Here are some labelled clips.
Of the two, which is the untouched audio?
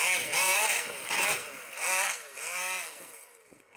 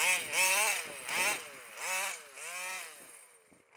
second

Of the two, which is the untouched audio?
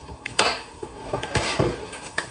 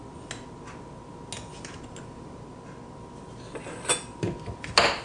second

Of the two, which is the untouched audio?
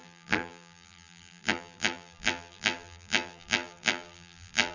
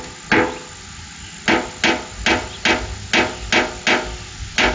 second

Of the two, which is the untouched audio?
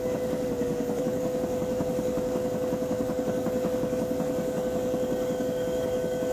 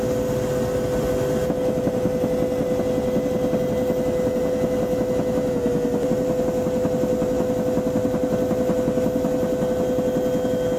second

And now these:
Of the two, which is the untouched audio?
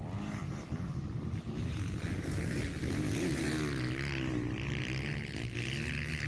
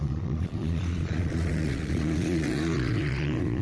first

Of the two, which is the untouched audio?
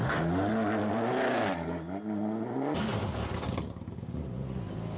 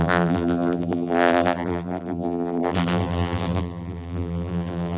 first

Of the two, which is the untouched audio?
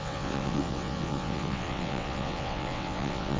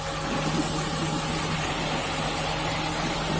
second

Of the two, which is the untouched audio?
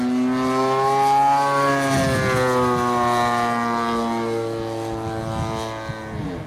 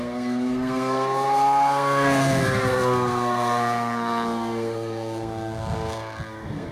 first